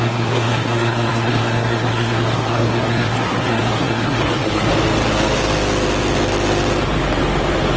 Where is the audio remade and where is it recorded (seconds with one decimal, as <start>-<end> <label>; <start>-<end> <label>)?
0.0-4.7 remade; 4.7-7.8 recorded